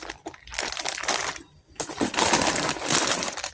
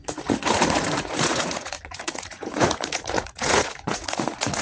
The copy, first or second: second